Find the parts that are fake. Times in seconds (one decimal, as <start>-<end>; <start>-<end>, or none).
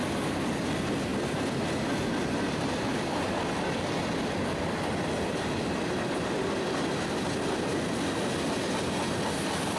none